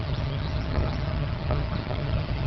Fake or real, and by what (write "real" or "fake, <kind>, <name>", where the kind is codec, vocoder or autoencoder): fake, vocoder, HiFi-GAN